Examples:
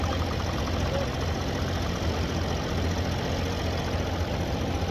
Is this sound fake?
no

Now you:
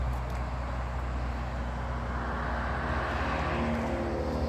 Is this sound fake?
no